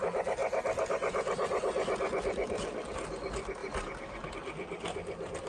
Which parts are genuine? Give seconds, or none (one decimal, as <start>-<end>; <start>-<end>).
0.0-5.5